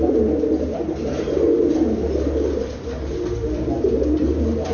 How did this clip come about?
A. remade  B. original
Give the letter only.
B